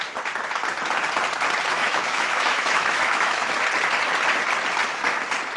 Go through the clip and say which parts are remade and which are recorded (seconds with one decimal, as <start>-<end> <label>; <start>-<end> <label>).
0.0-1.7 recorded; 1.7-3.5 remade; 3.5-5.6 recorded